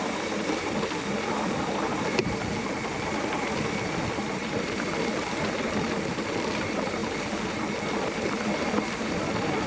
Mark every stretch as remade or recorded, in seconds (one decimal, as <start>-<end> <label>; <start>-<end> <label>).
0.0-9.7 recorded